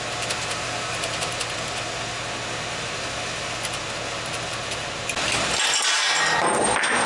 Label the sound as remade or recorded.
recorded